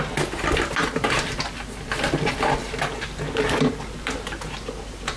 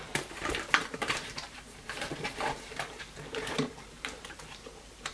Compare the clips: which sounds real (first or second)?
first